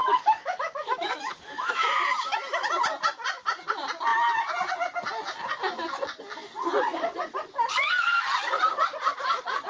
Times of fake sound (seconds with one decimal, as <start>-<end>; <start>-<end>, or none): 0.0-2.6